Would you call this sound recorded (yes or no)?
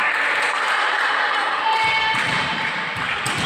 yes